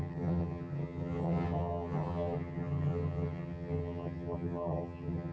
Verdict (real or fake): fake